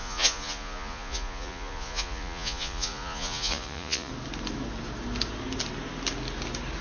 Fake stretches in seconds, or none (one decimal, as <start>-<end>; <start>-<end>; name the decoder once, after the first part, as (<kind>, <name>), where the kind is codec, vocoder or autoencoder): 0.0-4.1 (vocoder, Vocos)